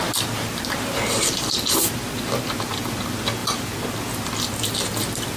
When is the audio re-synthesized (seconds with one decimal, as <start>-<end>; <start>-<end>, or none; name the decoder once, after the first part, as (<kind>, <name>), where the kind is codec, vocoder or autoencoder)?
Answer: none